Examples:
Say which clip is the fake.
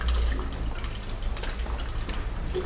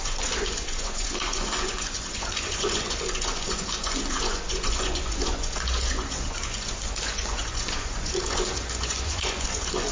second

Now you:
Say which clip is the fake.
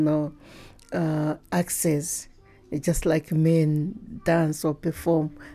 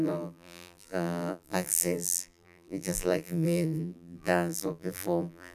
second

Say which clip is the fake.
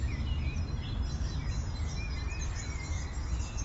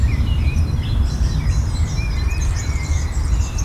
second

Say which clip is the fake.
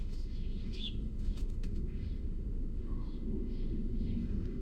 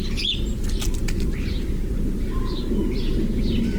first